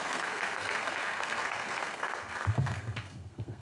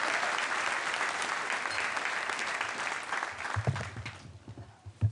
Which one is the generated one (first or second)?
first